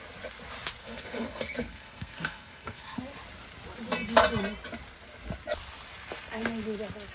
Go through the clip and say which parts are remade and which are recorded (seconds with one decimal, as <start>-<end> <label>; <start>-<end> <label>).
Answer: 0.0-0.8 recorded; 0.8-3.0 remade; 3.0-7.1 recorded